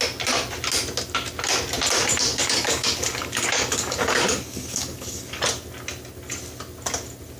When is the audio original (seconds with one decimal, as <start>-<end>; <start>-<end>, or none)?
0.0-2.3; 5.4-7.4